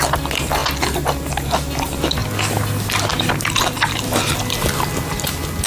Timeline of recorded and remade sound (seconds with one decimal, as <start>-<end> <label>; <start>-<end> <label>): 0.0-5.7 recorded